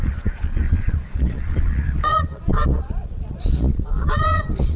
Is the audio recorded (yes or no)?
no